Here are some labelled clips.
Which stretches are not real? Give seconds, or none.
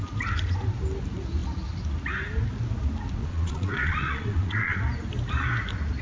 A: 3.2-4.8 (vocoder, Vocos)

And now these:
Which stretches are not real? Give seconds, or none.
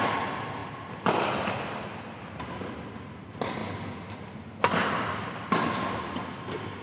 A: none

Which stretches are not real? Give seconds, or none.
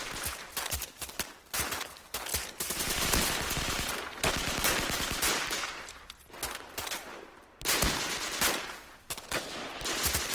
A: none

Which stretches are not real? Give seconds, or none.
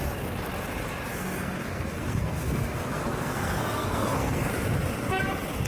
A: 1.1-4.5 (codec, SNAC)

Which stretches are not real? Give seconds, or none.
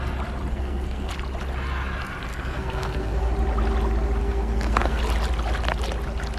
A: 0.5-1.1 (codec, SNAC); 2.3-3.3; 4.2-5.0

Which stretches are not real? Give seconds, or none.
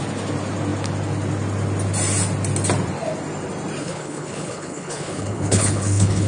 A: 3.8-6.3 (codec, HILCodec)